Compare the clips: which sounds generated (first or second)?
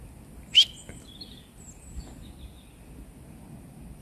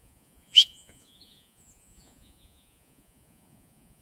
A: second